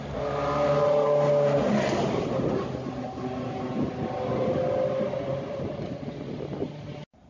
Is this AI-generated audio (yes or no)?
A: no